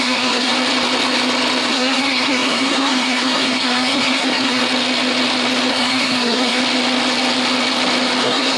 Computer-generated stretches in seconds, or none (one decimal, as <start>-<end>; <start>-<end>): 0.0-0.5; 1.7-4.6; 5.7-6.6; 8.2-8.6